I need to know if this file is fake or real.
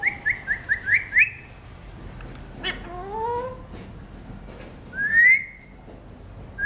real